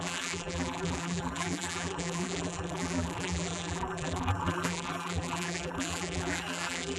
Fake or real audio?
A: fake